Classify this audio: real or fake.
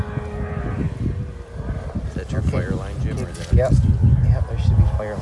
real